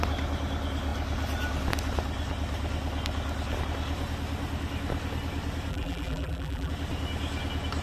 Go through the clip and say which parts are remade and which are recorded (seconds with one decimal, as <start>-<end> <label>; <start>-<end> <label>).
0.0-5.7 recorded; 5.7-6.7 remade; 6.7-7.8 recorded